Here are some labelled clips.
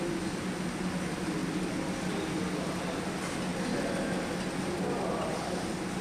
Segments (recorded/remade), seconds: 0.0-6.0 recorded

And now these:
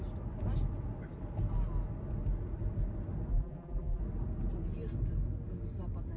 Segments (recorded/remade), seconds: 0.0-3.3 recorded; 3.3-4.0 remade; 4.0-6.2 recorded

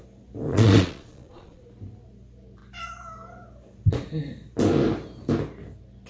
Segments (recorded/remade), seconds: 0.0-0.5 recorded; 0.5-1.6 remade; 1.6-6.1 recorded

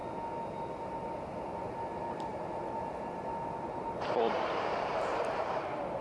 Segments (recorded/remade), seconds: 0.0-1.9 recorded; 1.9-6.0 remade

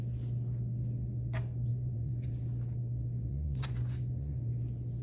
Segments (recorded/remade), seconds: 0.0-1.7 recorded; 1.7-2.3 remade; 2.3-3.3 recorded; 3.3-4.5 remade; 4.5-5.0 recorded

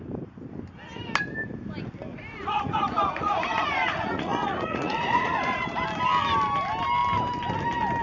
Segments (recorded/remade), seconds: 0.0-2.1 recorded; 2.1-5.7 remade; 5.7-8.0 recorded